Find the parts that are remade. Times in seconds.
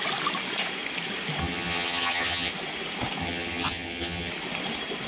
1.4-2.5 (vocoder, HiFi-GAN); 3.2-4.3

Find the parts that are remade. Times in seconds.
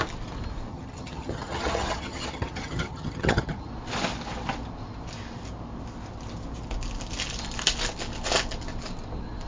0.7-3.7 (vocoder, HiFi-GAN)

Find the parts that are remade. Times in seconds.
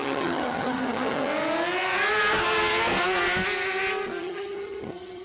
0.0-1.3 (vocoder, HiFi-GAN); 4.2-5.2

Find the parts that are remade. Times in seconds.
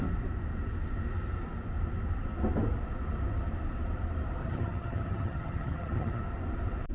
4.4-6.2 (vocoder, HiFi-GAN)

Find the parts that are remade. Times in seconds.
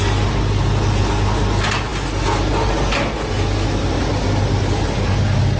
none